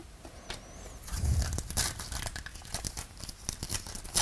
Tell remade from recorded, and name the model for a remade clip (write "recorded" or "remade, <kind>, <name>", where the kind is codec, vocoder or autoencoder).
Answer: recorded